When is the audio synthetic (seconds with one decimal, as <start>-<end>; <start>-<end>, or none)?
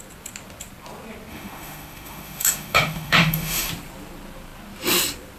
1.3-3.7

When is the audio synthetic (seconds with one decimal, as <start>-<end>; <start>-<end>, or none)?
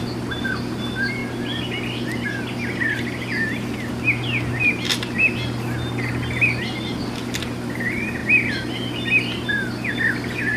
none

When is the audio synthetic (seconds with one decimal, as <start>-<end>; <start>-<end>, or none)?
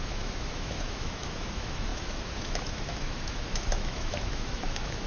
0.0-5.1